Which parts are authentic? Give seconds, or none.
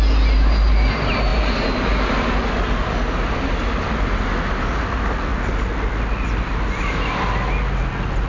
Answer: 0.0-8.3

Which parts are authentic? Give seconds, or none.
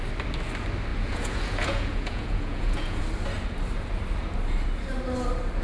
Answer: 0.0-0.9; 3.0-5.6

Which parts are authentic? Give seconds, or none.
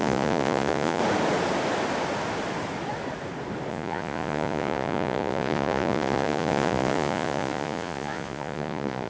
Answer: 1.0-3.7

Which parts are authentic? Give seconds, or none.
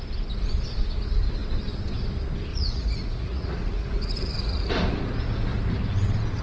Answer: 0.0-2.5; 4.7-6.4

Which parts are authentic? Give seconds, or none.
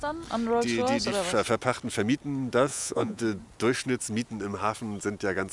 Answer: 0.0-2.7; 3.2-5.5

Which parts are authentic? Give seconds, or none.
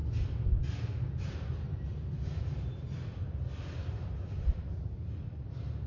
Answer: 0.0-5.9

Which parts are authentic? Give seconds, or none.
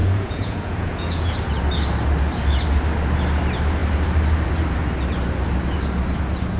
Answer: 1.3-6.6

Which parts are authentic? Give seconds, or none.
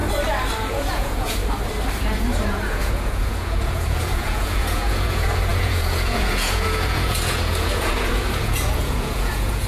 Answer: 0.0-0.7; 1.4-2.5